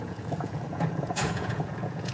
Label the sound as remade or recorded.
remade